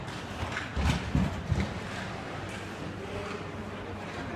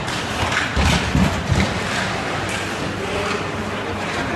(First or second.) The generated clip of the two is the second